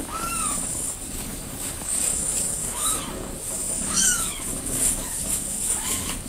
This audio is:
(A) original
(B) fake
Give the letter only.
B